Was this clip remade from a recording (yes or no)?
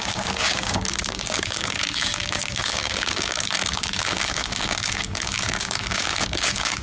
yes